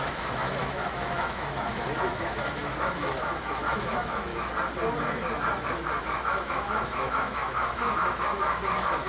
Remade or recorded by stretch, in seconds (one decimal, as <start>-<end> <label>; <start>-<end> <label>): 0.0-4.3 remade; 4.3-6.0 recorded; 6.0-9.1 remade